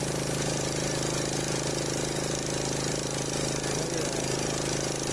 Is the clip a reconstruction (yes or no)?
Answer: no